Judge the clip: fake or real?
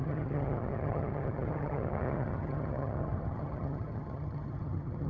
fake